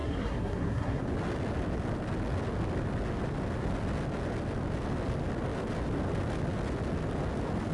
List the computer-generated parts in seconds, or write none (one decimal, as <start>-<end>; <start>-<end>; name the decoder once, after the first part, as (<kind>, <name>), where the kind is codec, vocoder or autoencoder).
0.0-1.0 (codec, SNAC)